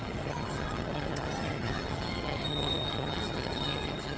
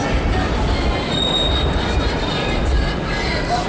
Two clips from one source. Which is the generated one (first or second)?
first